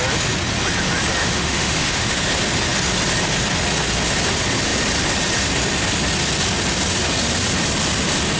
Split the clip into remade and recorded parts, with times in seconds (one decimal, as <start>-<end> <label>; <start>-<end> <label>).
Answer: 0.0-1.2 recorded; 1.2-2.2 remade; 2.2-8.4 recorded